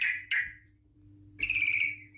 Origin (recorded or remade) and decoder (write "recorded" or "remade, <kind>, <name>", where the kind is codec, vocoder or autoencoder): recorded